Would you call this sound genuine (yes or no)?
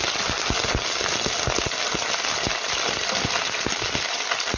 yes